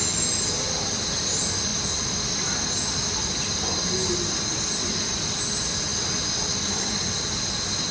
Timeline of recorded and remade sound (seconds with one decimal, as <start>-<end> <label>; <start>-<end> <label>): 0.0-7.9 recorded